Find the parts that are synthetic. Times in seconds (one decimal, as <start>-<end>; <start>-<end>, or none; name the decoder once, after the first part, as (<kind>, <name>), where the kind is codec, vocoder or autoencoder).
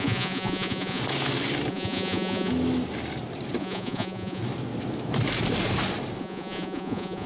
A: 0.0-1.0 (vocoder, Vocos); 1.7-2.5; 3.6-4.4; 6.2-7.3